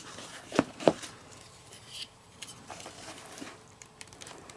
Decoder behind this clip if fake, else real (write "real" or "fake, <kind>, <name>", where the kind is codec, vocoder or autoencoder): fake, vocoder, BigVGAN v2